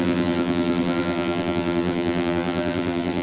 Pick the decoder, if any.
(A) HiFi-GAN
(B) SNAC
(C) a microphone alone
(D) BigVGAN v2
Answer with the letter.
D